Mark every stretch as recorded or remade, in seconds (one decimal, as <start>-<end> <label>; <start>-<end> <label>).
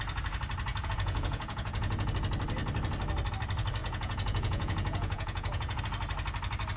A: 0.0-0.7 recorded; 0.7-2.1 remade; 2.1-3.8 recorded; 3.8-5.8 remade; 5.8-6.8 recorded